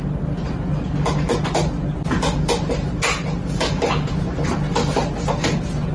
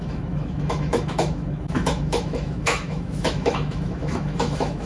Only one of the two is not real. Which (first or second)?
second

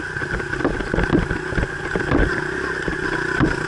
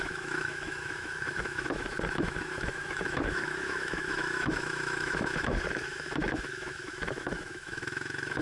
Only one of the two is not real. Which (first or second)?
second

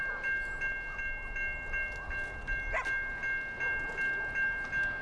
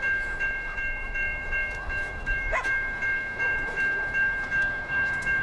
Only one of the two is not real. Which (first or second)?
second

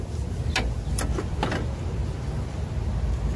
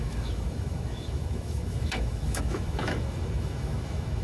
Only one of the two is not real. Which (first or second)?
second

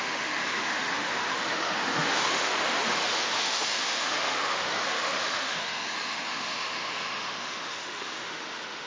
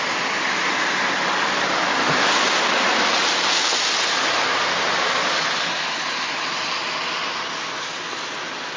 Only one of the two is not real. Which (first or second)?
first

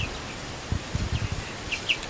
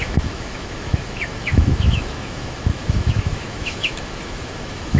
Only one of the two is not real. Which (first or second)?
second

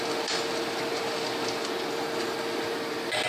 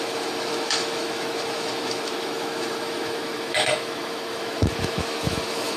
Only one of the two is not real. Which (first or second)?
second